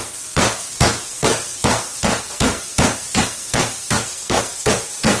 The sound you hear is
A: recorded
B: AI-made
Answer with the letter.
B